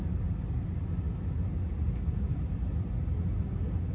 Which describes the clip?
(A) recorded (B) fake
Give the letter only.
A